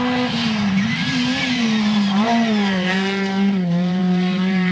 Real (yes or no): no